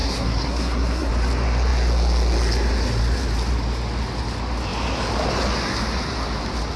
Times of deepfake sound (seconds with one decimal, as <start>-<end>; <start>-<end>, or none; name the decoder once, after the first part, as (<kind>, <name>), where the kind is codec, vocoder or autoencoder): 0.0-1.1 (codec, SNAC)